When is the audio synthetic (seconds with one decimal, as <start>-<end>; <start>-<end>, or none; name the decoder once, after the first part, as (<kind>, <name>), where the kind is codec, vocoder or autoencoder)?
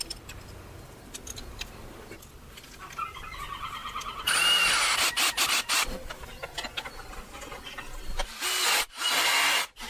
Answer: none